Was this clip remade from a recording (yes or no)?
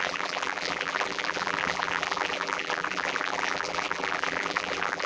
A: yes